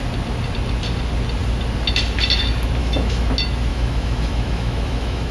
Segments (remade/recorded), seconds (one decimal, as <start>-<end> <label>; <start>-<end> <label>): 0.0-2.8 recorded; 2.8-3.3 remade; 3.3-3.7 recorded; 3.7-5.3 remade